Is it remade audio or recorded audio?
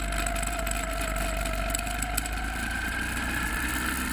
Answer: recorded